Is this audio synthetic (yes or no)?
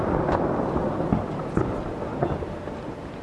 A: no